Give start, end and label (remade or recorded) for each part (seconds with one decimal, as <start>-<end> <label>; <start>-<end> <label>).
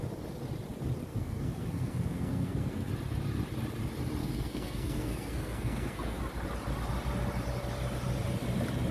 0.0-1.1 recorded; 1.1-2.9 remade; 2.9-4.2 recorded; 4.2-6.2 remade; 6.2-8.9 recorded